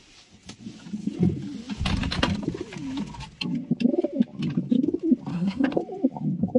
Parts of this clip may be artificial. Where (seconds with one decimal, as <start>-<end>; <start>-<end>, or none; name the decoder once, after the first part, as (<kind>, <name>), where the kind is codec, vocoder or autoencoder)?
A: 5.3-5.8 (codec, SNAC)